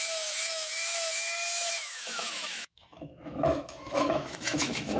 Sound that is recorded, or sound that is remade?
remade